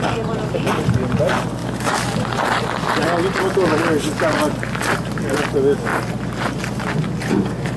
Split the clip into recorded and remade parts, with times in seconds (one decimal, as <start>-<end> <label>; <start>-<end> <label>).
0.0-7.8 recorded